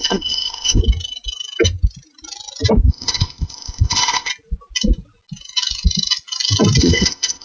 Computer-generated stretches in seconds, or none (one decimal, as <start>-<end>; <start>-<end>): 0.0-0.8; 2.9-4.3; 6.8-7.4